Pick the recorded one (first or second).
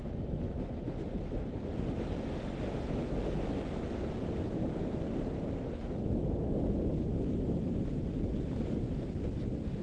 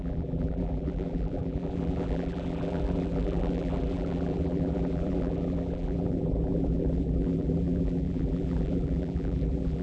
first